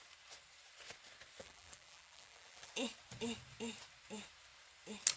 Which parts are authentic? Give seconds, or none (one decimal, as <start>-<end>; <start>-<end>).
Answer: 0.0-1.4; 2.7-5.2